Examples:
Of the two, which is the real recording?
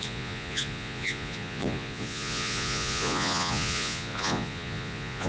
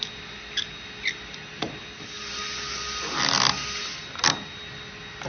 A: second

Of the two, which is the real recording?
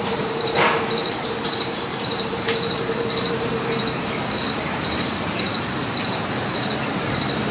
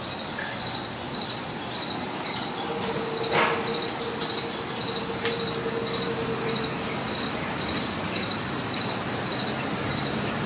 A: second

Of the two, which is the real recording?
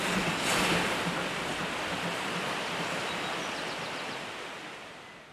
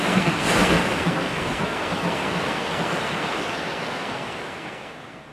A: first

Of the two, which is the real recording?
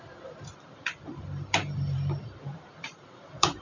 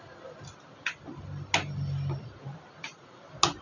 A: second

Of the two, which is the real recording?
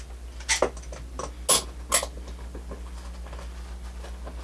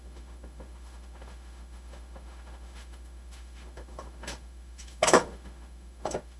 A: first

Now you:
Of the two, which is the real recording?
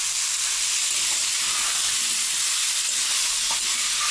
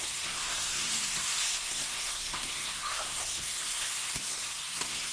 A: first